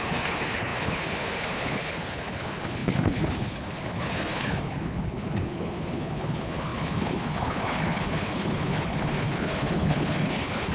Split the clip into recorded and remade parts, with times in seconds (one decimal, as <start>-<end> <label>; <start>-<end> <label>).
0.0-10.7 remade